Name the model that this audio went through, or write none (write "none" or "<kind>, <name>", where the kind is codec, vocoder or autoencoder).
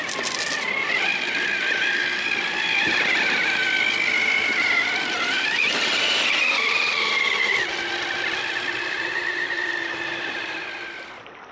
none